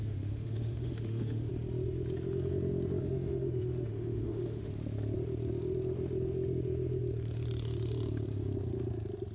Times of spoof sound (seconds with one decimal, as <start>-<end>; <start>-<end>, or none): 0.0-1.5; 3.0-4.7